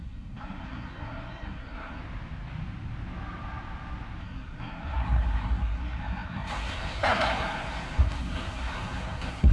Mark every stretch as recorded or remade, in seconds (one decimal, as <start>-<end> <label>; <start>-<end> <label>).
0.0-2.0 remade; 2.0-4.2 recorded; 4.2-9.5 remade